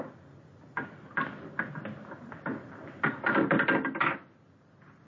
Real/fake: real